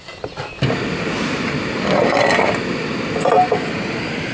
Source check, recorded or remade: recorded